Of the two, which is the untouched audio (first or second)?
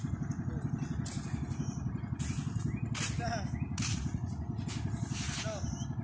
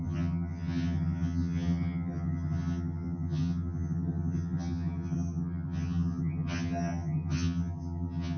first